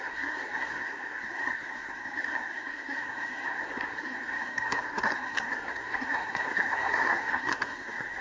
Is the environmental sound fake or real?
fake